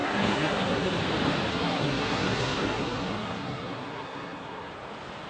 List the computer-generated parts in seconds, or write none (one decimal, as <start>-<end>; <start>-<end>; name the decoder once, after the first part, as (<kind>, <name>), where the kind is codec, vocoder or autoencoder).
0.0-1.0 (codec, SNAC); 1.5-4.7